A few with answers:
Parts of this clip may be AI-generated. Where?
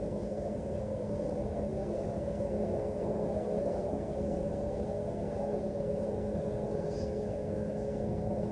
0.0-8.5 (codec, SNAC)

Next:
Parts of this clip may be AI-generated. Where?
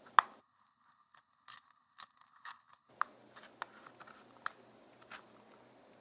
0.4-2.9 (codec, HILCodec)